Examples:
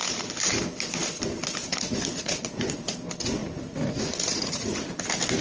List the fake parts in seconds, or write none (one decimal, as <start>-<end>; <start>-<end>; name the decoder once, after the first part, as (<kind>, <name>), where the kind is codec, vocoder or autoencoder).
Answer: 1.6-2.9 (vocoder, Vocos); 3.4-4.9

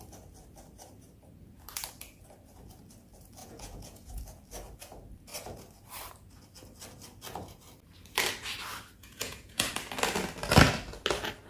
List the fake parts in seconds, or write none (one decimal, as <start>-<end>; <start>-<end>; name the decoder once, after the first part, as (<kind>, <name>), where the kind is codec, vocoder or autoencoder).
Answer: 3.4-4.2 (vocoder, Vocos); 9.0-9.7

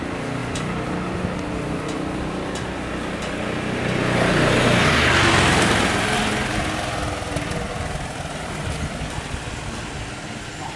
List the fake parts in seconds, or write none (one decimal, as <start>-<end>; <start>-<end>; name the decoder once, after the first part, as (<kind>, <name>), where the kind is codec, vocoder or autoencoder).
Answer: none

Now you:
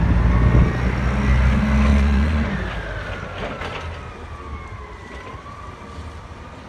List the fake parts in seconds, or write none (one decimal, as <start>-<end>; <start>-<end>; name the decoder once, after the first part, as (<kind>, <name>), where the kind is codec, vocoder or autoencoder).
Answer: 1.9-2.5 (vocoder, Vocos)

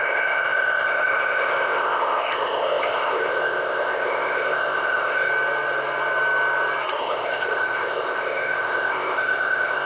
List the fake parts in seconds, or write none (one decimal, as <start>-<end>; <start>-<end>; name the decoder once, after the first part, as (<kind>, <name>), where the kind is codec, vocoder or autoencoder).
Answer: 0.0-5.3 (codec, ZipCodec); 7.0-9.9

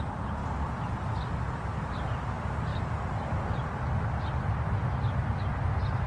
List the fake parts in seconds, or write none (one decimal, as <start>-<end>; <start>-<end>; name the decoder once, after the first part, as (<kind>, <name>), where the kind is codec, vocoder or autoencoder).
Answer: 0.4-1.9 (vocoder, BigVGAN v2)